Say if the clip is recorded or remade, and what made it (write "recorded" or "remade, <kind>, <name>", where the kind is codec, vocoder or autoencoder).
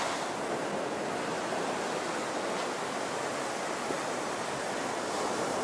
recorded